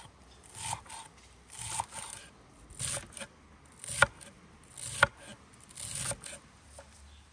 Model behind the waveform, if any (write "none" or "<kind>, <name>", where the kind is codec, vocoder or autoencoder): none